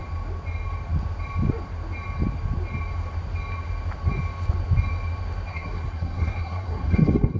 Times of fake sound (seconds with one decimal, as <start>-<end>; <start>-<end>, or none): 5.5-7.4

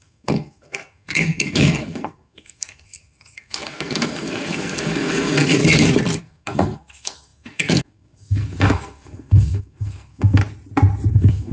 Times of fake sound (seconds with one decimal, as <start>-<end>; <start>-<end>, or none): 0.0-5.6; 6.2-10.4; 11.1-11.5

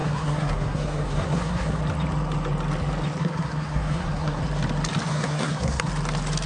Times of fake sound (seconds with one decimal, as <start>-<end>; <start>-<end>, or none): 0.0-1.8; 3.2-4.4; 5.1-5.9